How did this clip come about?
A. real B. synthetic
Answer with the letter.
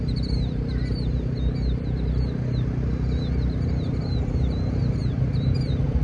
A